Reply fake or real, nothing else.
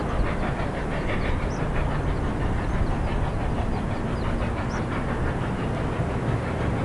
real